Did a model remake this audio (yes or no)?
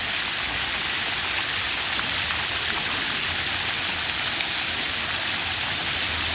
no